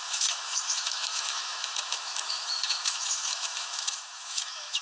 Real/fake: fake